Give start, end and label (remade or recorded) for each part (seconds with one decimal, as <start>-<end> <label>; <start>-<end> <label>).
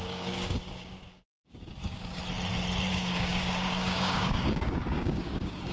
0.0-2.2 remade; 2.2-2.9 recorded; 2.9-5.7 remade